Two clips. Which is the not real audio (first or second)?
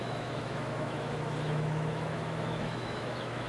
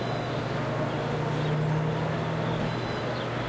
first